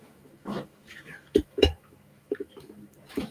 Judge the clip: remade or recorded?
remade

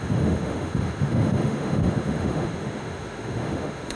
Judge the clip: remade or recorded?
remade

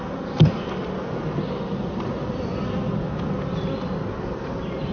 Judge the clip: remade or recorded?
recorded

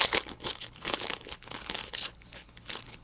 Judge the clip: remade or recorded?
remade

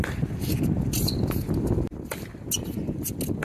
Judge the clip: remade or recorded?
recorded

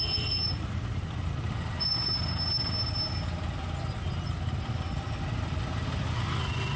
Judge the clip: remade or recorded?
recorded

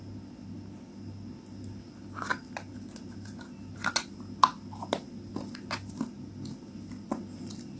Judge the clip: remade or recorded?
recorded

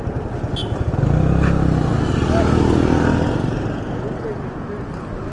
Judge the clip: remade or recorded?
recorded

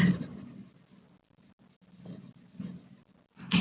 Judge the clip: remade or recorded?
recorded